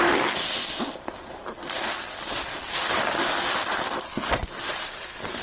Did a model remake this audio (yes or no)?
no